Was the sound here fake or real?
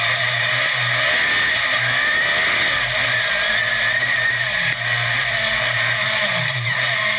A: real